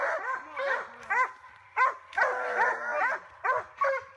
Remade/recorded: recorded